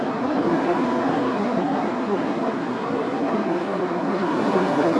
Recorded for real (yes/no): no